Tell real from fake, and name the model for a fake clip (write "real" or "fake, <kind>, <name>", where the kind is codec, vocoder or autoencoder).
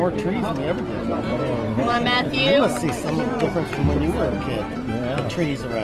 real